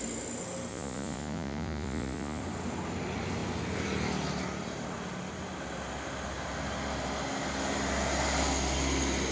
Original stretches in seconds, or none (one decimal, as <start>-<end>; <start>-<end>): 0.0-0.7; 2.4-9.3